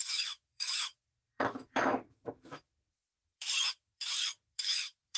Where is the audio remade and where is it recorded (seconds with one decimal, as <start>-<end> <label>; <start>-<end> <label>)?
0.0-5.2 remade